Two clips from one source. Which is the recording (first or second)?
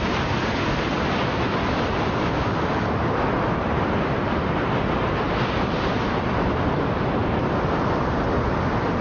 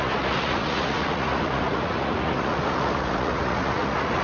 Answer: first